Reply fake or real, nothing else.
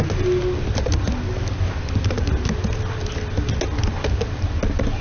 real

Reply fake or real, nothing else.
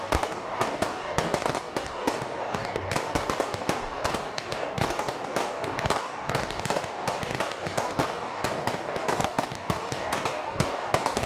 fake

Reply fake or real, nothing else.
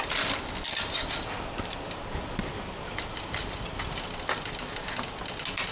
real